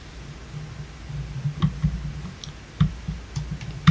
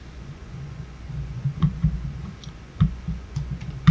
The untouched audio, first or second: first